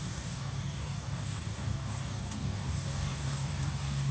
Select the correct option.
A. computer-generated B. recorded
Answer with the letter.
A